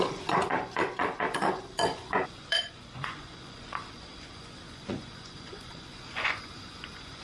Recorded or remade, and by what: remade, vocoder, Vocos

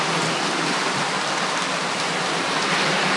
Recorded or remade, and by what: recorded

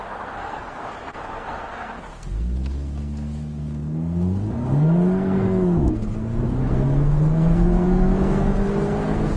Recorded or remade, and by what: remade, codec, SNAC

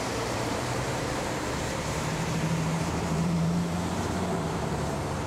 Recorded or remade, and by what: remade, vocoder, BigVGAN v2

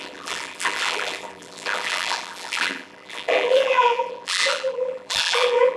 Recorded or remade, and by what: remade, vocoder, BigVGAN v2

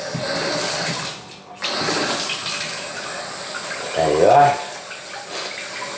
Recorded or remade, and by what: recorded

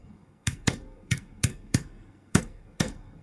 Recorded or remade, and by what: remade, codec, SNAC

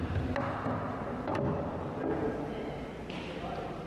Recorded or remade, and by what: recorded